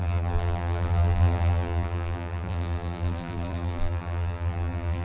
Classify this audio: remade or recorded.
remade